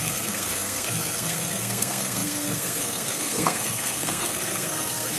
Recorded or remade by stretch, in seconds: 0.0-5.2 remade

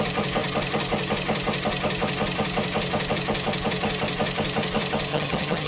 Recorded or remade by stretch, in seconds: 0.0-5.1 recorded; 5.1-5.7 remade

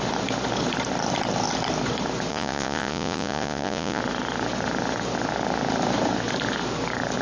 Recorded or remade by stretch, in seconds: 0.0-2.3 recorded; 2.3-4.0 remade; 4.0-7.2 recorded